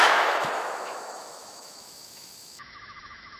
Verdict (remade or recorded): remade